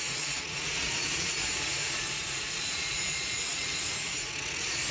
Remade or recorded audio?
remade